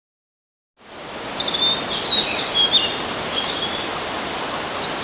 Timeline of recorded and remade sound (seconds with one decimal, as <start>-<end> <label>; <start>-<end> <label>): 0.0-5.0 recorded